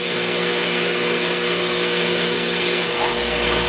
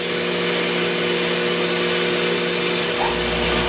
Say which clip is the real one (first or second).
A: second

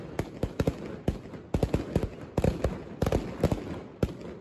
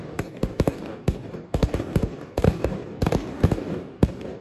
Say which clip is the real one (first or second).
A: first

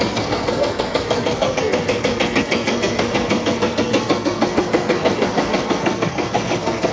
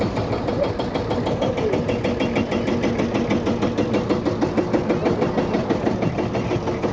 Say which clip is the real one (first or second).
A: second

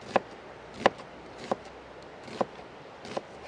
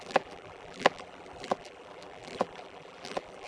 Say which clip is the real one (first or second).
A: first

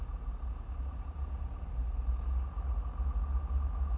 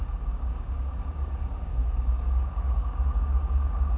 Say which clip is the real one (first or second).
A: first